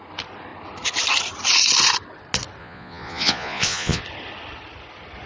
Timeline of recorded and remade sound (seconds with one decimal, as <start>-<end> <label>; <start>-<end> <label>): 0.0-2.6 recorded; 2.6-4.0 remade; 4.0-5.3 recorded